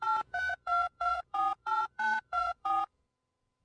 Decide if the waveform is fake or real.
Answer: fake